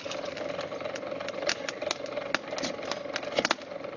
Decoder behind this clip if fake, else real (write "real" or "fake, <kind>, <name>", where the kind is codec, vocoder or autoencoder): real